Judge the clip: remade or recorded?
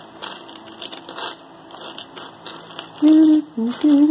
recorded